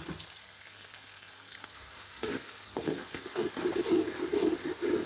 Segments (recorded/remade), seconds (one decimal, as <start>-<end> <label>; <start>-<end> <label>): 0.0-0.4 recorded; 0.4-3.5 remade; 3.5-5.1 recorded

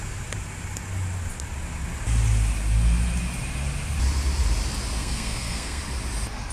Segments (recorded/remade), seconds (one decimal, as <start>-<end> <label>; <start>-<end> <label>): 0.0-5.0 recorded; 5.0-5.8 remade; 5.8-6.5 recorded

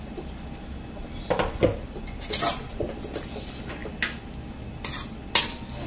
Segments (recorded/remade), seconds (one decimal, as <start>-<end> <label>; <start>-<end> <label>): 0.0-5.9 recorded

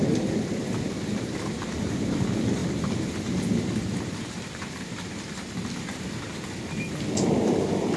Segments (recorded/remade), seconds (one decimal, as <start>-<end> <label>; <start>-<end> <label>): 0.0-0.6 recorded; 0.6-8.0 remade